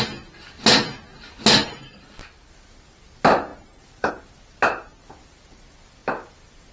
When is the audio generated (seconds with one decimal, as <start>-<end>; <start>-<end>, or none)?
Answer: 1.6-2.5; 3.5-4.1